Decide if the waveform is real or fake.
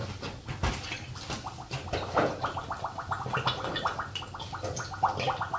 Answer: real